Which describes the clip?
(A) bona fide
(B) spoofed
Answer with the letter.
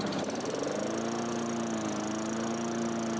A